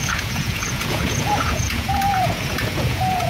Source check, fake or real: fake